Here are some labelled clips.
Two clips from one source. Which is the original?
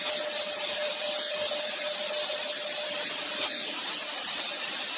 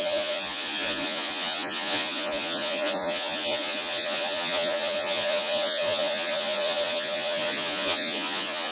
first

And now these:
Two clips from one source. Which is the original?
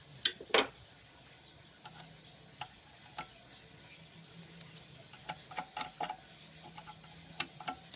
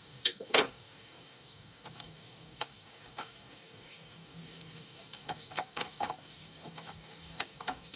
first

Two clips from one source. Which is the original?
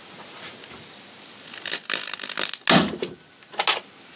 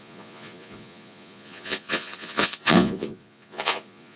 first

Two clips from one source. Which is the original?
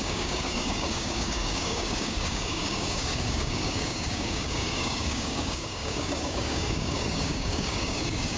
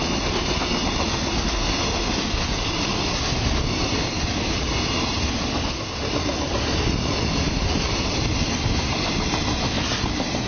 second